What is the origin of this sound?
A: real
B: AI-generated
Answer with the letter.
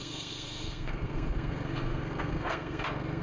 B